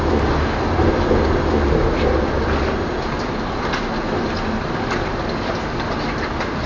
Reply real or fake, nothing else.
real